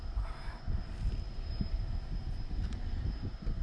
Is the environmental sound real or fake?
real